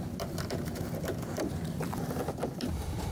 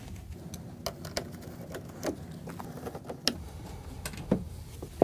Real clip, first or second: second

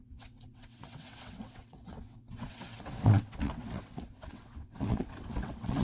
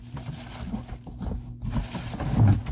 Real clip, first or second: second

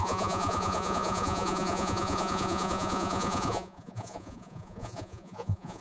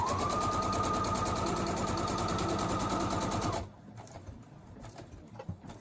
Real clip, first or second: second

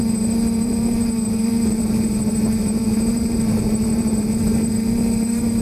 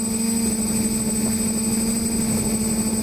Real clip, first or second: second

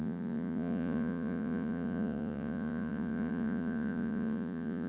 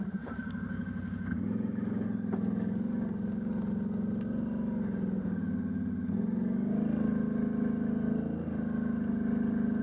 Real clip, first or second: second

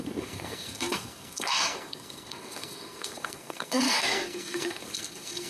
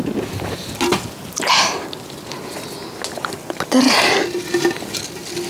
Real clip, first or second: second